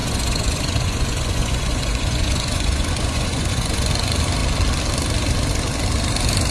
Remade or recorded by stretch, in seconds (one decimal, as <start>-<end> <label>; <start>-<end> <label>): 0.0-3.9 remade; 3.9-6.5 recorded